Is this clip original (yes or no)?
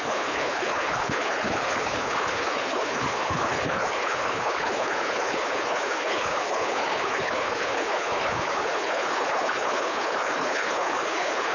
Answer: no